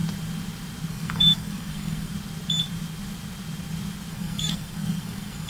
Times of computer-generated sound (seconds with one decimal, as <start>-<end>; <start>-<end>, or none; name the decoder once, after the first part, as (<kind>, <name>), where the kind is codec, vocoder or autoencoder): 0.9-2.1 (codec, SNAC); 4.1-5.5